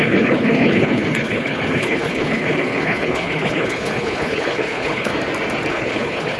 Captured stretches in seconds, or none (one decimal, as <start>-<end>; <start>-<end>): 5.1-5.7